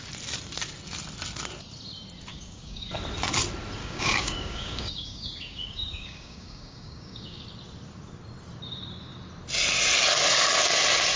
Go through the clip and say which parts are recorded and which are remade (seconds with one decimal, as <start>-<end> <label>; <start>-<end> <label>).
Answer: 0.0-2.3 recorded; 2.3-2.9 remade; 2.9-3.8 recorded; 3.8-7.4 remade; 7.4-11.2 recorded